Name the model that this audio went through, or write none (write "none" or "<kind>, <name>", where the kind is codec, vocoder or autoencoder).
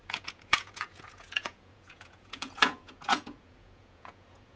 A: vocoder, Vocos